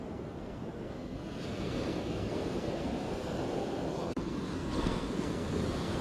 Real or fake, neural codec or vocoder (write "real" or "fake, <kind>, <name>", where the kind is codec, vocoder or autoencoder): fake, codec, SNAC